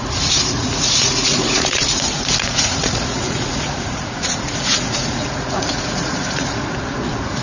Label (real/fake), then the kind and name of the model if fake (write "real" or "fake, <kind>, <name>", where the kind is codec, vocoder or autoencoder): fake, vocoder, Vocos